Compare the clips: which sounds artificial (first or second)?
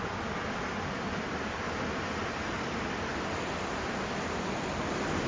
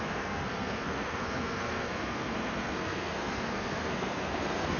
second